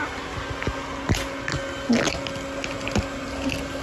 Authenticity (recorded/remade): recorded